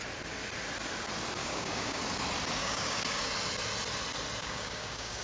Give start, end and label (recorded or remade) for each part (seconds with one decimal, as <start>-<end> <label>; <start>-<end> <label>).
0.0-1.4 recorded; 1.4-2.0 remade; 2.0-2.6 recorded; 2.6-3.3 remade; 3.3-4.4 recorded; 4.4-5.2 remade